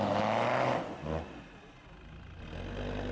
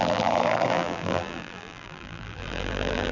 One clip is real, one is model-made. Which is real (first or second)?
first